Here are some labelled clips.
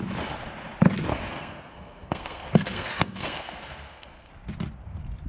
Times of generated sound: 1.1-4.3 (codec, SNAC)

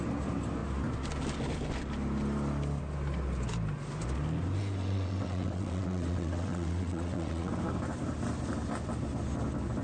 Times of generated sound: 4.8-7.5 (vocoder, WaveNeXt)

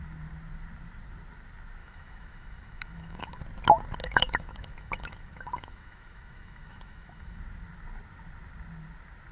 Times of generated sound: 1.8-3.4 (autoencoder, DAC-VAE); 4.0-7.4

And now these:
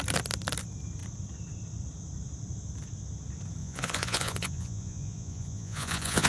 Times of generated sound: 3.6-6.3 (vocoder, Vocos)